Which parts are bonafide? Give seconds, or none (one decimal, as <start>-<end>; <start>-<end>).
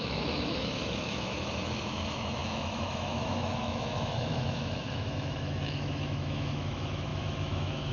none